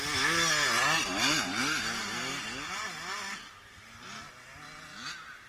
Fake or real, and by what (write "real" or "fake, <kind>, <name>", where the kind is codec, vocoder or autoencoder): real